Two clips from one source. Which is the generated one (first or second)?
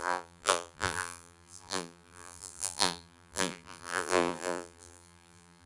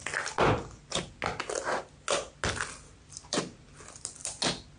first